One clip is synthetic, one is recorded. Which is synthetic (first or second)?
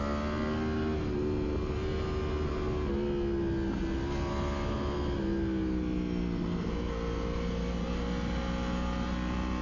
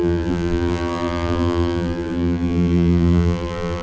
second